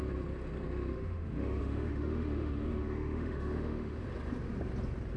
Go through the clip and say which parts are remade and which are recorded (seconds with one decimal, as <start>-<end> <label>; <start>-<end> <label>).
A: 0.0-0.9 recorded; 0.9-4.0 remade; 4.0-5.2 recorded